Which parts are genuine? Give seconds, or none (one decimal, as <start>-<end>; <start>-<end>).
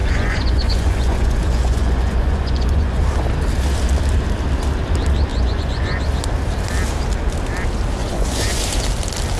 3.0-5.3; 6.0-8.0; 8.6-9.4